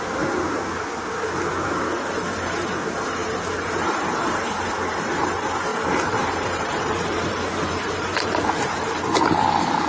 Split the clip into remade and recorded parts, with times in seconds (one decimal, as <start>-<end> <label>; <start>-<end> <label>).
0.0-5.7 recorded; 5.7-9.0 remade; 9.0-9.9 recorded